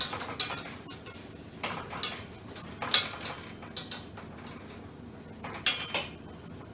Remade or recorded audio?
recorded